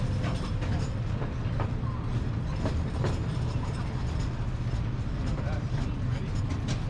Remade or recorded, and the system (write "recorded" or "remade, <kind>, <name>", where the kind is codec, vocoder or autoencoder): recorded